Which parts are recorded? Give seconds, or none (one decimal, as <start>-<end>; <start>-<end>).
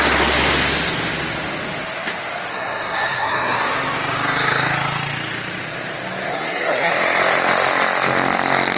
0.0-2.5; 3.6-6.3; 6.9-8.8